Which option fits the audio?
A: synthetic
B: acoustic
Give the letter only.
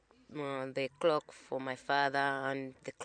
A